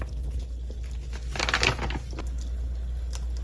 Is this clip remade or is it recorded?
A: recorded